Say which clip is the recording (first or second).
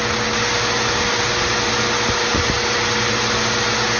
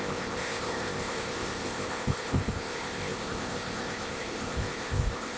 first